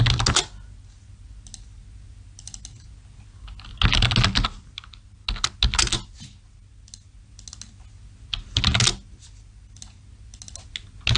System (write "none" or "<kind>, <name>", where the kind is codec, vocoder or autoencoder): none